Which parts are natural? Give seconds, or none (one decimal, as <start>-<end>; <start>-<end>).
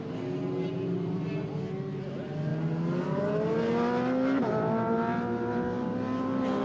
0.0-6.6